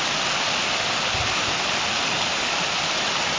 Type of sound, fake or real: real